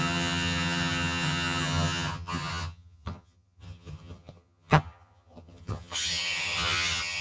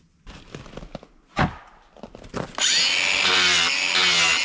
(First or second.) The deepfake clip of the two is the first